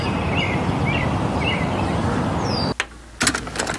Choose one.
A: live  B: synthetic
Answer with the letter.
A